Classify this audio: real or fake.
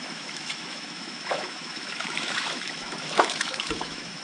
fake